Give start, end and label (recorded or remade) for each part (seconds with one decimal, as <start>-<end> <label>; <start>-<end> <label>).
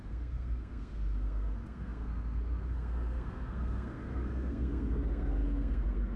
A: 0.0-6.2 remade